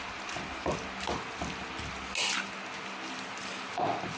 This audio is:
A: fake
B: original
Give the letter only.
B